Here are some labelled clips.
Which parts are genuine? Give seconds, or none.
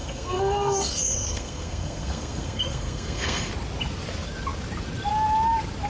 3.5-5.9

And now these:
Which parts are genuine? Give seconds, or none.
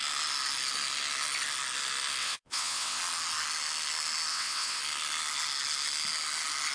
0.0-2.2; 3.0-4.3; 4.8-6.7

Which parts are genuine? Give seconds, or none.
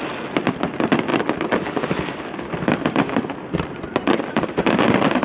0.0-1.1; 4.2-5.2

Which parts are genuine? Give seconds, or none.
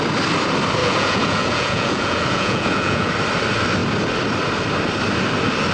0.0-0.8; 3.1-5.7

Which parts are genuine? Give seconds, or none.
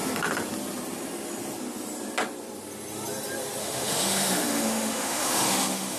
0.0-3.6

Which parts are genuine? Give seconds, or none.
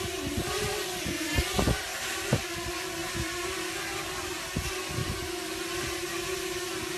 0.0-3.0; 3.8-5.0; 6.4-7.0